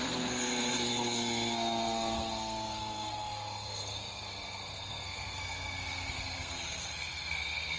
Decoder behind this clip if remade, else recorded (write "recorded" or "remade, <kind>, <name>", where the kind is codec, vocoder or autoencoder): remade, codec, SNAC